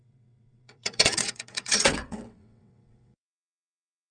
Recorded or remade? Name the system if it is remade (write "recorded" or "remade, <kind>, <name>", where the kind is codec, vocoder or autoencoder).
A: remade, vocoder, WaveNeXt